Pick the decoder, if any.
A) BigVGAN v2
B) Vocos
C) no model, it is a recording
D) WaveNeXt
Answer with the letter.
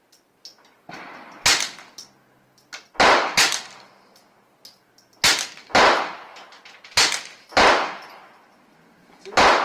C